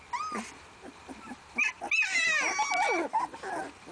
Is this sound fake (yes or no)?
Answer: no